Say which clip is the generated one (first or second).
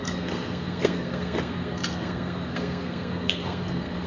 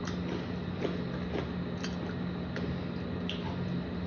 first